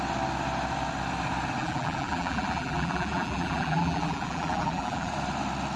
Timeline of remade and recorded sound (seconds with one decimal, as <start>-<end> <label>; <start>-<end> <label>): 0.0-1.6 recorded; 1.6-5.1 remade; 5.1-5.8 recorded